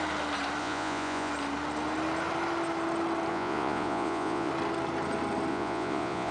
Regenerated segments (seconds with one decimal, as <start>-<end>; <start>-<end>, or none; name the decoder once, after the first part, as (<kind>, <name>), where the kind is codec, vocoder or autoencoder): 0.6-1.3 (vocoder, Vocos); 3.3-4.5; 5.5-6.3